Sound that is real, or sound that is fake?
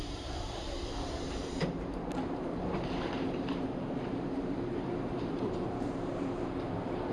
fake